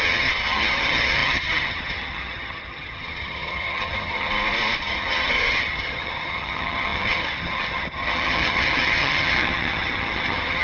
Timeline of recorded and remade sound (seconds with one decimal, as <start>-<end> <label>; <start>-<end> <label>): 0.0-4.3 remade; 4.3-4.8 recorded; 4.8-10.6 remade